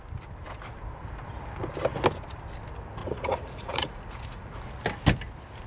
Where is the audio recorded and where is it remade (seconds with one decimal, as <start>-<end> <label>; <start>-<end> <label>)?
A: 0.0-3.0 recorded; 3.0-4.6 remade; 4.6-5.7 recorded